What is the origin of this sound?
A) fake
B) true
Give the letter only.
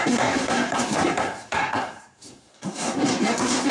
A